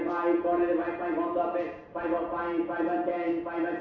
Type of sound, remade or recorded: recorded